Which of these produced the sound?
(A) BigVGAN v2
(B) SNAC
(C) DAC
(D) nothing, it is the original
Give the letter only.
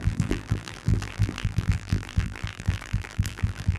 A